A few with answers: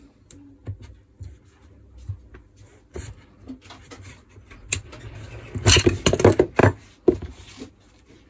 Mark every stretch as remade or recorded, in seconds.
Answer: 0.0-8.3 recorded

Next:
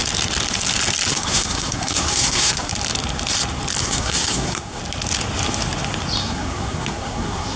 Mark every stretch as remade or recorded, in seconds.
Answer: 0.0-1.1 recorded; 1.1-2.7 remade; 2.7-3.8 recorded; 3.8-4.8 remade; 4.8-6.2 recorded; 6.2-7.6 remade